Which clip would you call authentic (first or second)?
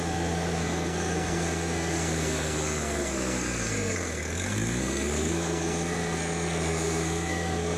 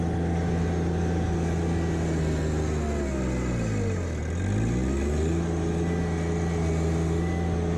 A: second